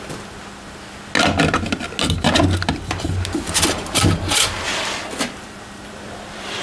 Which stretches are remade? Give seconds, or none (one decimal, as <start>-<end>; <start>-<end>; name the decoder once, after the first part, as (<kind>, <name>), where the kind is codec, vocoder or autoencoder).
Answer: 0.0-0.4 (vocoder, BigVGAN v2); 4.4-6.6